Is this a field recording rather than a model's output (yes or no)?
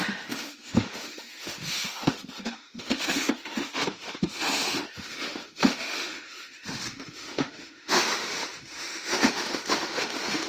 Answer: no